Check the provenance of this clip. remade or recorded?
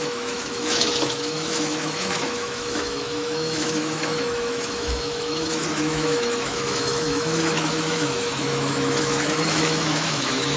remade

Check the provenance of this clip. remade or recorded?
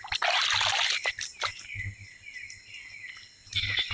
recorded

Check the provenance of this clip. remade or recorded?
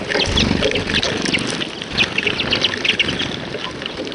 recorded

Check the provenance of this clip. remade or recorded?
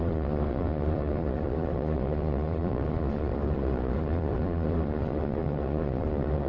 remade